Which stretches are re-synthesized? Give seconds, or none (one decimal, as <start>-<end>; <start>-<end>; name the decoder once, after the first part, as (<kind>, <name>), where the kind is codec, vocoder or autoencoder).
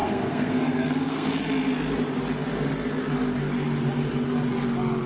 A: 0.0-1.4 (codec, SNAC)